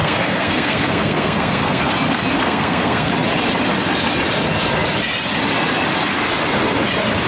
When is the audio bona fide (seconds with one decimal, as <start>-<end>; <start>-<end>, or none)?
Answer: 1.8-2.4; 3.1-7.3

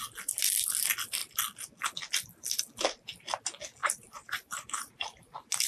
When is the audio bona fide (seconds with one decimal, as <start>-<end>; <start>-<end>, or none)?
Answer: 0.0-3.8; 4.9-5.7